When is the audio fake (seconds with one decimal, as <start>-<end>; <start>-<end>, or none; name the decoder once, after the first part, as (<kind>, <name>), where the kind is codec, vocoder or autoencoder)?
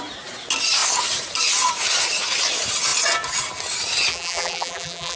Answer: 4.1-5.2 (vocoder, BigVGAN v2)